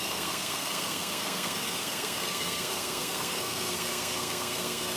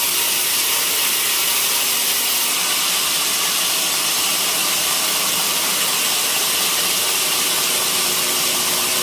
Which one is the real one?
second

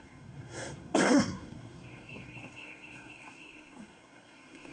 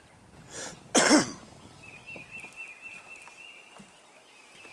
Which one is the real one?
second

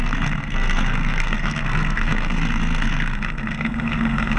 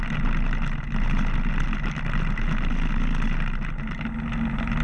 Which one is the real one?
second